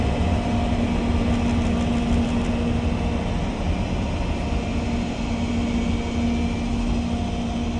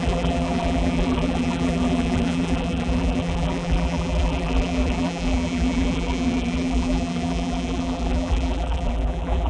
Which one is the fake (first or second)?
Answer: second